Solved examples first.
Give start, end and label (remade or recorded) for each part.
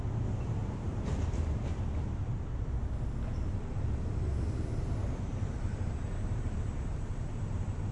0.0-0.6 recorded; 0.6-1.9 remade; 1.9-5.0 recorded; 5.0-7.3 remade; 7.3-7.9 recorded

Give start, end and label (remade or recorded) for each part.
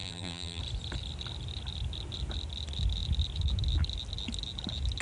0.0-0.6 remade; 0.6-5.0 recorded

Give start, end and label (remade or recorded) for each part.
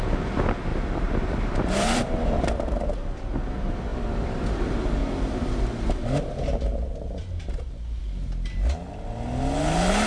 0.0-0.7 recorded; 0.7-2.5 remade; 2.5-3.9 recorded; 3.9-4.4 remade; 4.4-10.1 recorded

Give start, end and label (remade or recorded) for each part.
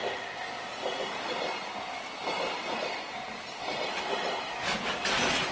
0.0-5.5 recorded